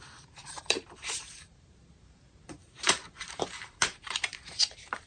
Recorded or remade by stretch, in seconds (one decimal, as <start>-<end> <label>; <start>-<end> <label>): 0.0-5.1 remade